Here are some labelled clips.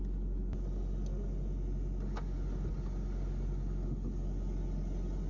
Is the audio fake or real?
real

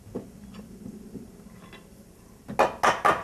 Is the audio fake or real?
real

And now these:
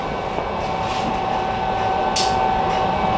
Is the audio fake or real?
real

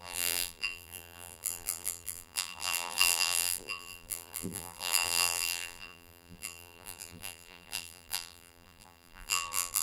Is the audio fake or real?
fake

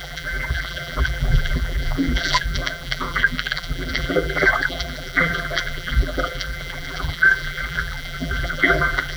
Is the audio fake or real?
fake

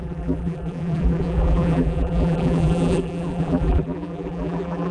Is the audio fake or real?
fake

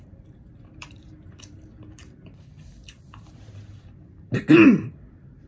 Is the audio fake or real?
fake